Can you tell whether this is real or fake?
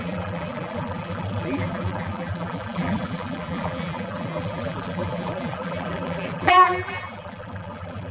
fake